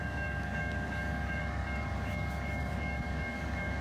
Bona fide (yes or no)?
no